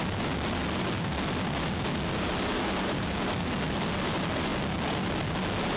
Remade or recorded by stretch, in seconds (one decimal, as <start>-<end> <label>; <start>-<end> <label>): 0.0-5.8 recorded